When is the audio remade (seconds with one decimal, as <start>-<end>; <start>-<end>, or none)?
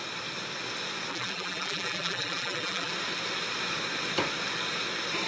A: 1.1-2.9